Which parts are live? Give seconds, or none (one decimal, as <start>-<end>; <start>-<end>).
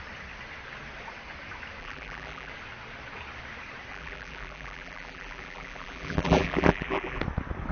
0.0-1.8; 2.5-3.9; 7.2-7.7